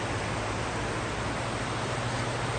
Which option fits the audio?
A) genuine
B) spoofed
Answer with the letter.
A